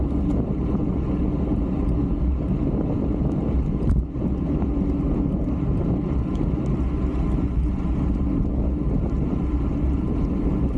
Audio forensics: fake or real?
real